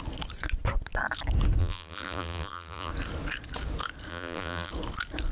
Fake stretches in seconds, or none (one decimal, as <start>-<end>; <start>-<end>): 1.6-2.9; 4.1-4.7